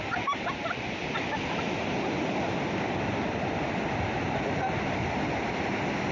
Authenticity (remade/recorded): recorded